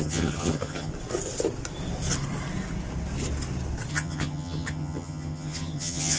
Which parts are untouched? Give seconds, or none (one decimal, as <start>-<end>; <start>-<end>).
0.9-3.9